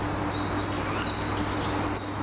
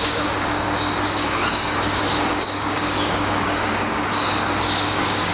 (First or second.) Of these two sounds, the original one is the first